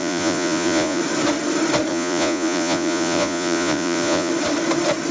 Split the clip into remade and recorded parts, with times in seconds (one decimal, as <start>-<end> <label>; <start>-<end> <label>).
0.0-1.0 remade; 1.0-1.9 recorded; 1.9-4.3 remade; 4.3-5.1 recorded